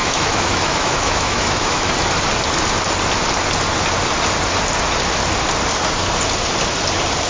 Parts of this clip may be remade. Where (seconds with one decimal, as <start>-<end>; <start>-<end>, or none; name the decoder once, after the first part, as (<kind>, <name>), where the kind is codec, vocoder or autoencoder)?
0.0-1.9 (autoencoder, DAC-VAE)